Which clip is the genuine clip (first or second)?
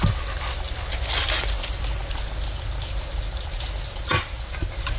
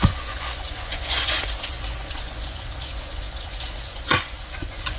first